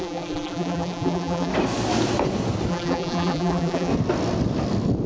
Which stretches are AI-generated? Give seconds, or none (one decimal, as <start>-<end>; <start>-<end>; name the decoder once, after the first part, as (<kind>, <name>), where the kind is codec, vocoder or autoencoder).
0.0-1.5 (vocoder, BigVGAN v2); 2.7-3.9